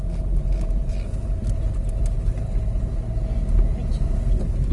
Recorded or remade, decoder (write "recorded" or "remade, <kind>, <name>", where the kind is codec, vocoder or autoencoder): recorded